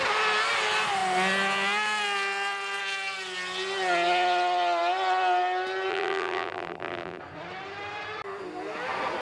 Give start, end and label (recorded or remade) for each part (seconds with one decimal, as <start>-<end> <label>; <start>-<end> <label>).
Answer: 0.0-5.9 recorded; 5.9-7.2 remade; 7.2-9.2 recorded